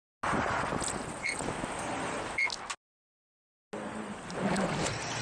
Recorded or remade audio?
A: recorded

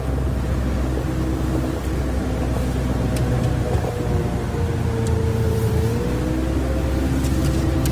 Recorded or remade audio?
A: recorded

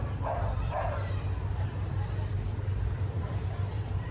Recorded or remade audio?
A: remade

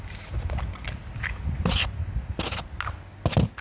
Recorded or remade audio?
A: recorded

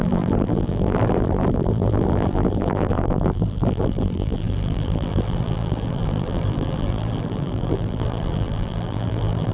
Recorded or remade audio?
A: remade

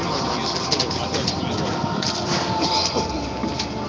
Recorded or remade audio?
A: remade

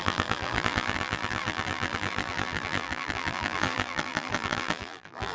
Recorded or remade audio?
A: remade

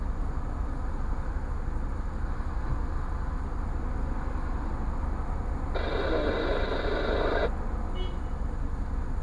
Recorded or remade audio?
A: recorded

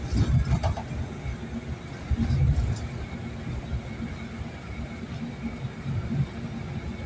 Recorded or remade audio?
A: recorded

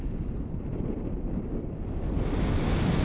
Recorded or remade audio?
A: recorded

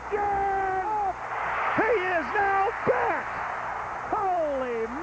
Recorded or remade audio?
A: recorded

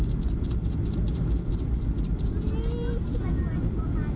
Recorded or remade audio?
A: recorded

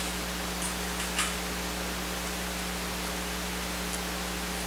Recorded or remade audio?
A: recorded